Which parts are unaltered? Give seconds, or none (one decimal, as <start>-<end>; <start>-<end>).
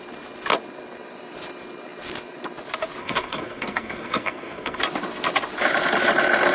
0.0-3.0; 4.8-6.5